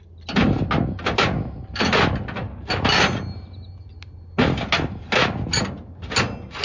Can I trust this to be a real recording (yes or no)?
yes